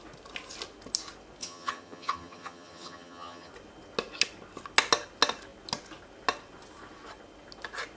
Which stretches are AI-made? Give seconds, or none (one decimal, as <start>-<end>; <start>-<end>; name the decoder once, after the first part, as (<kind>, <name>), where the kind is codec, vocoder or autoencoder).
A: 1.4-3.5 (vocoder, HiFi-GAN)